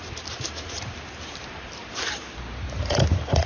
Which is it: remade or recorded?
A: remade